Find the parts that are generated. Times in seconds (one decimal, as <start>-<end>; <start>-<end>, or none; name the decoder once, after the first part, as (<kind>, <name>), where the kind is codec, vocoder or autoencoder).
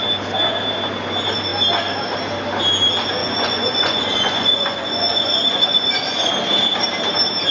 3.2-6.3 (vocoder, Vocos)